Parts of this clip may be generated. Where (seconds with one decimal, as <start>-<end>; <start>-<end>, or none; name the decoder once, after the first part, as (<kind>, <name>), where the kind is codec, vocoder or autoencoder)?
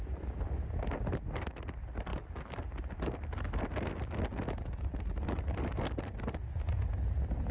none